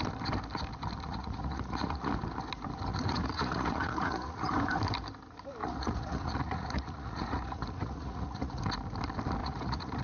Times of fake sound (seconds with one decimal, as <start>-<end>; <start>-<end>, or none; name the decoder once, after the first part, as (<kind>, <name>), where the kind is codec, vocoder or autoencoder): 1.1-2.1 (vocoder, Vocos); 2.9-4.5; 5.6-8.6; 9.4-10.0